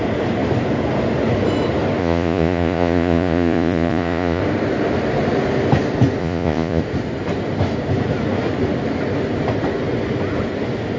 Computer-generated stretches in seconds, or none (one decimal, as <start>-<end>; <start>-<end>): 2.0-4.4; 6.2-6.8